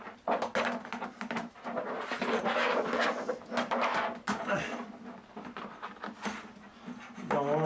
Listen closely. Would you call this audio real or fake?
real